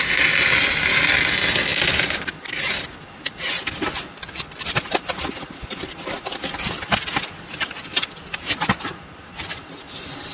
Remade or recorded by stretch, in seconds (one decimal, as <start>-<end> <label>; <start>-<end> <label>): 0.0-10.3 recorded